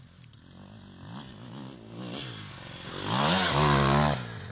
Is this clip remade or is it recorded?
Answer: recorded